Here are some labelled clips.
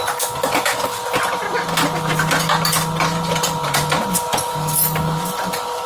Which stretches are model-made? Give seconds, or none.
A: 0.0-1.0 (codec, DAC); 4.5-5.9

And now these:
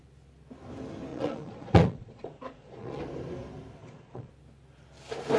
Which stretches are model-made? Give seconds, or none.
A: 1.1-3.0 (vocoder, Vocos); 3.8-4.3

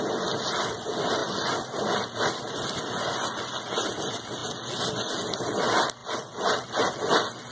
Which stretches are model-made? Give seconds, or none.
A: 1.2-3.6 (vocoder, BigVGAN v2); 6.0-6.9

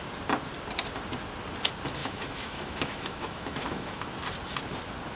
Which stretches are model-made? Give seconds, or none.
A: 2.0-4.1 (autoencoder, DAC-VAE)

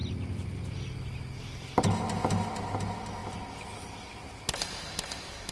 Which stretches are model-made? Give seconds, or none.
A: none

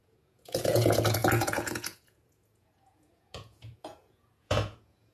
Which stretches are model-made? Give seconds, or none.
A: 0.0-5.1 (vocoder, Vocos)